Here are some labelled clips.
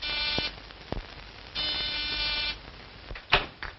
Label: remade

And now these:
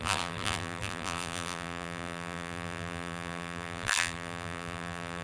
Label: remade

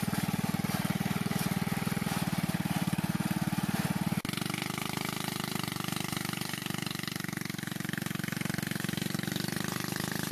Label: remade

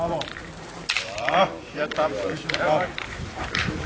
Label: remade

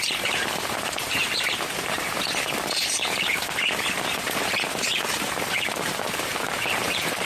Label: remade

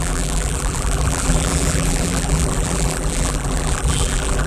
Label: remade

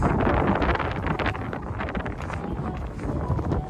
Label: recorded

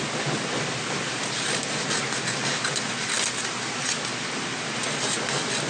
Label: recorded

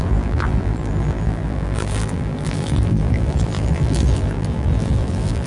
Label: remade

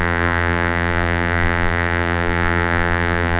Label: remade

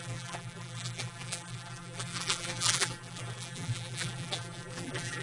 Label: remade